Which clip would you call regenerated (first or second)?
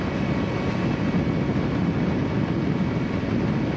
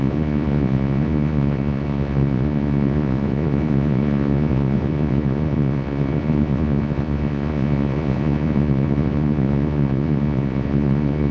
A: second